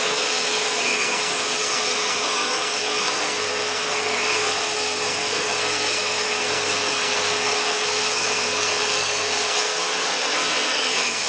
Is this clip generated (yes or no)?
yes